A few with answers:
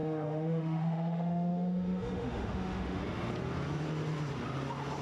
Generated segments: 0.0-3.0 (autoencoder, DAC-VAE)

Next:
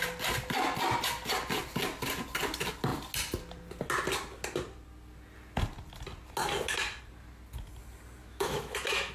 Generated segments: 8.2-9.1 (autoencoder, DAC-VAE)

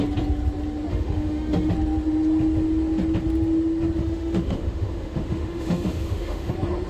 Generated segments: 0.9-1.7 (autoencoder, DAC-VAE); 4.0-6.5

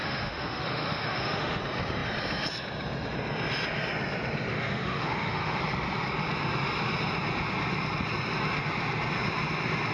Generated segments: 0.0-1.6 (autoencoder, DAC-VAE); 4.5-5.6

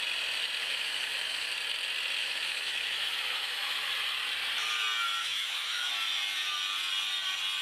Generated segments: 0.6-1.5 (autoencoder, DAC-VAE); 2.2-3.9; 5.2-5.9

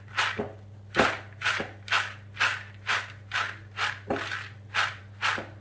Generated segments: none

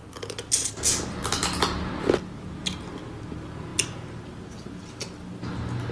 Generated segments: none

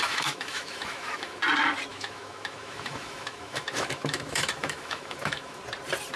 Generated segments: 0.0-1.4 (autoencoder, DAC-VAE); 1.9-5.6